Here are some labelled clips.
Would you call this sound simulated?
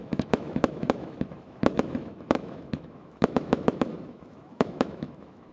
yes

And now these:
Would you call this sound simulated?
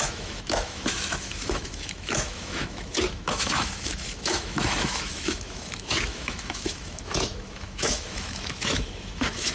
yes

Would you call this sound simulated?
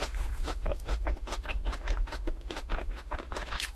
yes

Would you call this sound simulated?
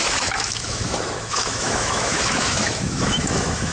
yes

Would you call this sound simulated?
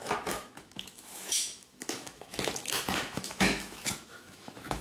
yes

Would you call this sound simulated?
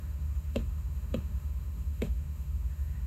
yes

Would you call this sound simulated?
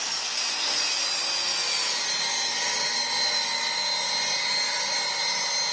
no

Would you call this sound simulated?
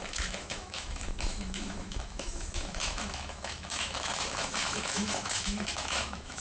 yes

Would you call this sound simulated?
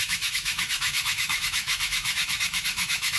yes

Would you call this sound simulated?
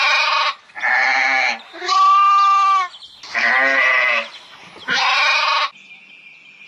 no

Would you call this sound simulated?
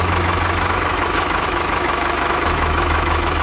yes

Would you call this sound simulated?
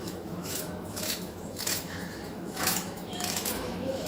yes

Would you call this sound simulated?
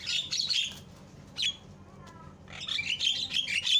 no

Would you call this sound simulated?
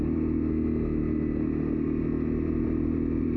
no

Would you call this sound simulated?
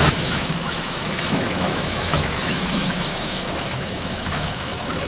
yes